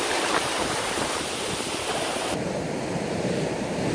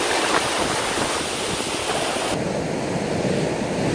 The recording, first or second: second